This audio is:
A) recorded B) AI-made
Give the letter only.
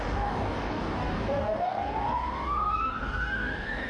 B